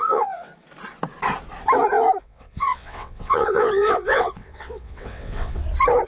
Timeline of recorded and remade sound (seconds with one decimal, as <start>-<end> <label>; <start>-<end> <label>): 0.0-0.5 remade; 0.5-2.2 recorded; 2.2-5.6 remade; 5.6-6.1 recorded

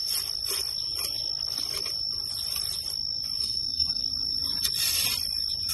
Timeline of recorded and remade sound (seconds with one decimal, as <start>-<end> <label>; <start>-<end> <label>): 0.0-3.4 recorded; 3.4-4.0 remade; 4.0-5.7 recorded

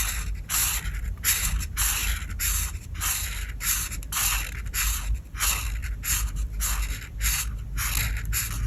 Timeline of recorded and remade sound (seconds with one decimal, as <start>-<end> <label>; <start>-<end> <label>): 0.0-0.6 recorded; 0.6-1.4 remade; 1.4-8.7 recorded

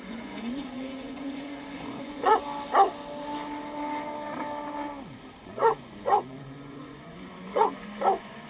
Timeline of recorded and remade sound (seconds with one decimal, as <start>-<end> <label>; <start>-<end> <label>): 0.0-2.4 remade; 2.4-5.4 recorded; 5.4-8.5 remade

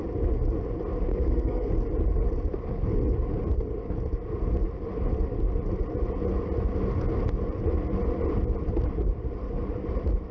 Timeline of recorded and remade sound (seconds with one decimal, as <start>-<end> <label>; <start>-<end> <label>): 0.0-1.1 recorded; 1.1-1.7 remade; 1.7-10.3 recorded

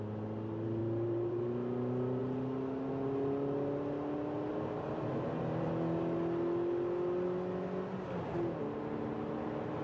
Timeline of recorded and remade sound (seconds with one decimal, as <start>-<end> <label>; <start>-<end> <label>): 0.0-0.8 recorded; 0.8-1.4 remade; 1.4-4.5 recorded; 4.5-5.7 remade; 5.7-9.8 recorded